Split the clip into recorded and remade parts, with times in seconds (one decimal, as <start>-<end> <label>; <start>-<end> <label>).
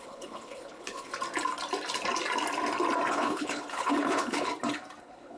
0.0-1.1 remade; 1.1-3.1 recorded; 3.1-4.5 remade; 4.5-5.0 recorded; 5.0-5.4 remade